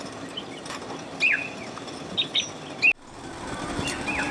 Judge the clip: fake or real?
real